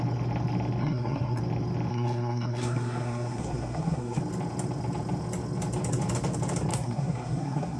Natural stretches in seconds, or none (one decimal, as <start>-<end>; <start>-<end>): 0.0-0.8; 1.4-1.9; 4.2-6.7

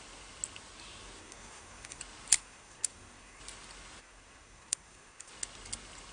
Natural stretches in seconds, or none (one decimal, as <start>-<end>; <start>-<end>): 0.0-1.2; 2.0-2.4; 3.4-4.0; 5.3-6.1

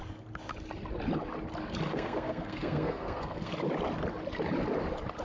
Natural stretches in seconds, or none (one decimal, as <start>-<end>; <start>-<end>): 0.0-1.9; 3.5-5.2

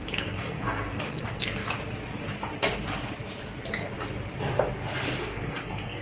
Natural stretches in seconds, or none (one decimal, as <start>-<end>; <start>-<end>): 1.6-5.2

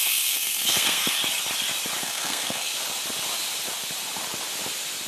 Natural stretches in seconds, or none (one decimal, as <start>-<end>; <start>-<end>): 1.2-2.0; 2.7-5.1